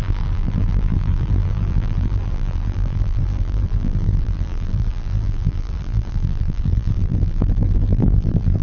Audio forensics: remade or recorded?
remade